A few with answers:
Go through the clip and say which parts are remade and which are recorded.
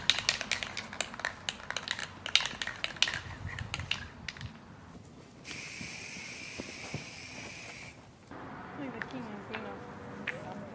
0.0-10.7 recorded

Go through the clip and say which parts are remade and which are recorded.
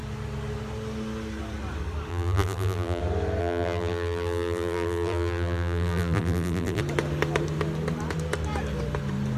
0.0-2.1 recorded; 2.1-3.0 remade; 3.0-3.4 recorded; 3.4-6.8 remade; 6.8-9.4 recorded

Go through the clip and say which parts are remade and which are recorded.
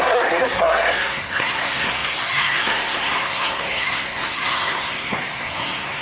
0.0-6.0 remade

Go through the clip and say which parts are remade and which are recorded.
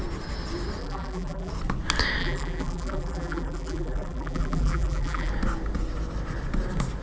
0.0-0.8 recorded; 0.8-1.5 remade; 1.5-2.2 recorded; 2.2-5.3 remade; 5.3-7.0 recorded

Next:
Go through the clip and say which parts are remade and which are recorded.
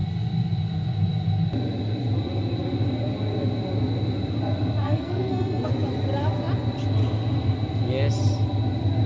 0.0-4.8 recorded; 4.8-5.7 remade; 5.7-9.1 recorded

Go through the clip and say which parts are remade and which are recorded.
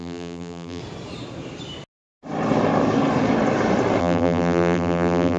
0.0-0.8 remade; 0.8-4.0 recorded; 4.0-5.4 remade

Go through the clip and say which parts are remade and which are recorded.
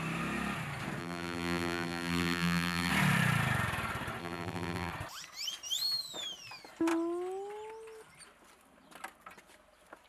0.0-1.0 recorded; 1.0-2.9 remade; 2.9-4.2 recorded; 4.2-4.9 remade; 4.9-10.1 recorded